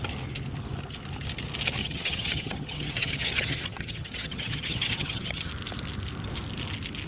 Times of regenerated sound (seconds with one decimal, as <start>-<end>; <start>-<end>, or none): 1.8-5.5